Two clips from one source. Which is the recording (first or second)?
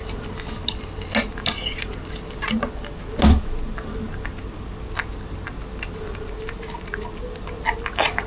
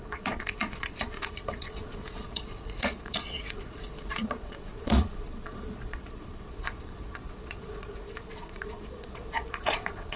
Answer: first